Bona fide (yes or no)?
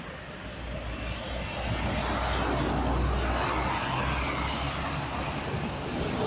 yes